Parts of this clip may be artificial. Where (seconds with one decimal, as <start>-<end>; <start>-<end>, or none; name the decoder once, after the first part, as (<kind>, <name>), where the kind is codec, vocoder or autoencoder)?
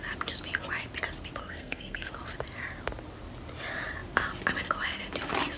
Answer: 1.4-2.1 (codec, SNAC)